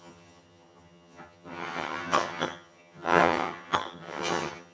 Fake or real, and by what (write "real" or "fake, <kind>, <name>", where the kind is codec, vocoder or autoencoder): fake, vocoder, HiFi-GAN